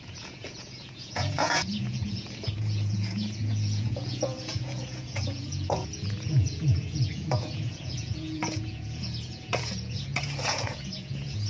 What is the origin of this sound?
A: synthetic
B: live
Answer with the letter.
A